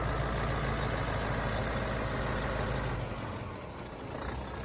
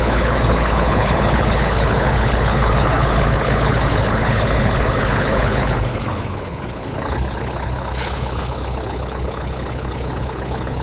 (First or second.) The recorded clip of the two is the first